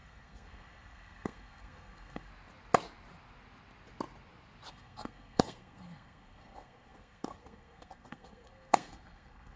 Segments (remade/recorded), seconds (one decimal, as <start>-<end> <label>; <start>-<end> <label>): 0.0-2.3 remade; 2.3-4.7 recorded; 4.7-9.6 remade